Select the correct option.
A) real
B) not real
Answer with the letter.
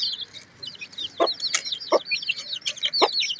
A